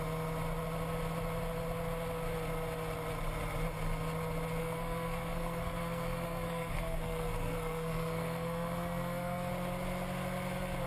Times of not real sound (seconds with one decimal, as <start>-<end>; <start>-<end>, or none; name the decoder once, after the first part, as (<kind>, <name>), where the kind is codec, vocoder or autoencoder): 4.6-9.5 (codec, SNAC)